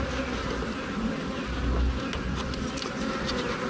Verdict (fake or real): real